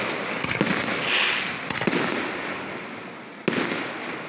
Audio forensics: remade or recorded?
recorded